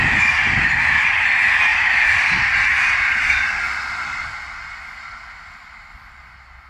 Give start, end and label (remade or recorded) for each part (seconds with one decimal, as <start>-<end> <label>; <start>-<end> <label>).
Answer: 0.0-6.7 recorded